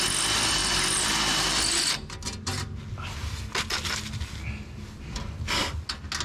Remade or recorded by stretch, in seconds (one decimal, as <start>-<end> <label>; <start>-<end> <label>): 0.0-6.2 recorded